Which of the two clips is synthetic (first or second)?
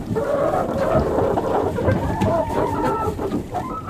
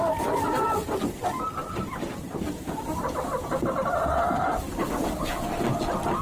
first